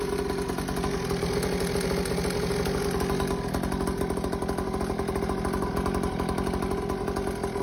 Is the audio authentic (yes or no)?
yes